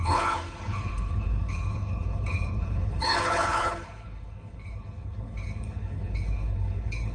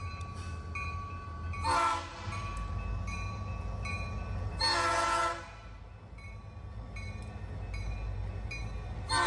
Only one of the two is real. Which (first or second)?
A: second